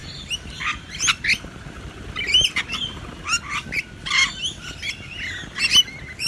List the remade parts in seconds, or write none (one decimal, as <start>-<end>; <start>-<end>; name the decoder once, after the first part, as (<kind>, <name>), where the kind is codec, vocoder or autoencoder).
none